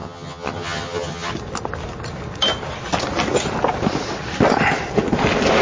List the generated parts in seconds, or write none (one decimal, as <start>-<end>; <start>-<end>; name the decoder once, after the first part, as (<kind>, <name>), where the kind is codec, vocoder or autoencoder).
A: 0.0-1.3 (vocoder, HiFi-GAN)